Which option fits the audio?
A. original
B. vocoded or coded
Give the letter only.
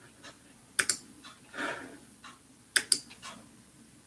A